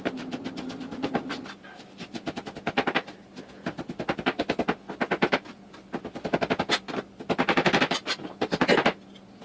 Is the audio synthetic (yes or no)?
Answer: no